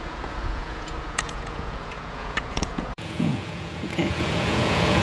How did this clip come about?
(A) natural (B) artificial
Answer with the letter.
B